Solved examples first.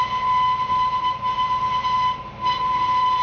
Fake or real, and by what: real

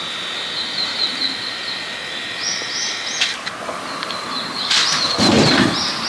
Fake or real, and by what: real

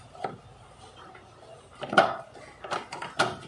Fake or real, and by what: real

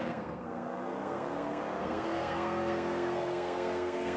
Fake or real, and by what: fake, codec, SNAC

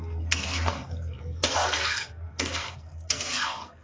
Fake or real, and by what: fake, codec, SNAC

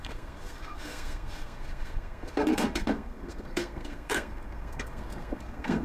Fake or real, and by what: fake, codec, SNAC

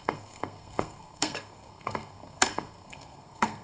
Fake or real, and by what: fake, codec, SNAC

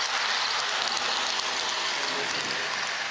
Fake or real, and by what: real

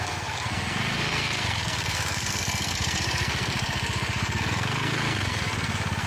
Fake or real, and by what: fake, codec, SNAC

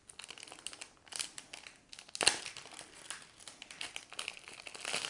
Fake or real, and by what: real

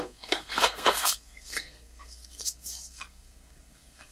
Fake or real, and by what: fake, codec, SNAC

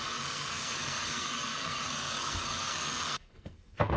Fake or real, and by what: fake, codec, SNAC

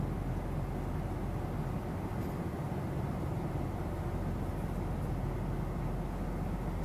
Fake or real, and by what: real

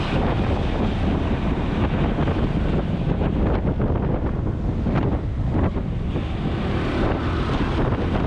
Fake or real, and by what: real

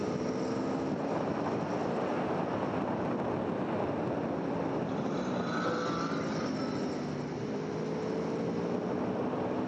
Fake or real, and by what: real